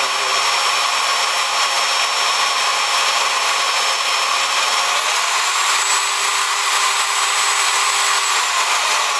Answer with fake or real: real